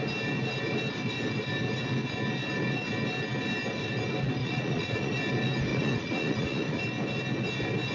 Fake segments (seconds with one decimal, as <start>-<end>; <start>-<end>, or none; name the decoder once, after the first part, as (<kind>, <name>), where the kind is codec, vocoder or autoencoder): 4.4-5.2 (vocoder, Vocos); 5.7-6.8